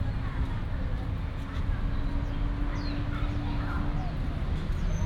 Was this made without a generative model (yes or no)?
yes